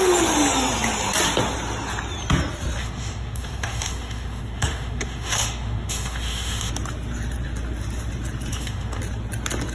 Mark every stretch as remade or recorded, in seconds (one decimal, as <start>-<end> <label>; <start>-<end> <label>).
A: 0.0-2.8 recorded; 2.8-6.7 remade; 6.7-8.5 recorded; 8.5-9.0 remade; 9.0-9.7 recorded